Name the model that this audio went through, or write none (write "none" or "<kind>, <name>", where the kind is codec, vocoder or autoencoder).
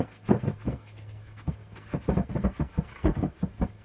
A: codec, SNAC